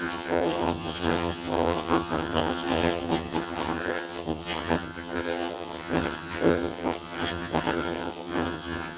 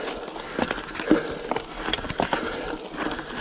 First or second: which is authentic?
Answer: second